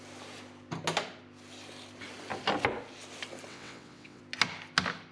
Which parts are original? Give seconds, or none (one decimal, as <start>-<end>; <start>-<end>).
0.0-3.5; 4.2-5.1